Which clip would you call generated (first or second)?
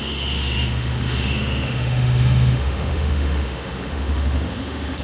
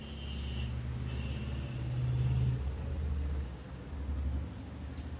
first